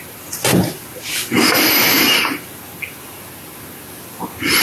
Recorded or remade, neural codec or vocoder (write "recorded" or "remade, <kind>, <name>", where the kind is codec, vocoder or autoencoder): recorded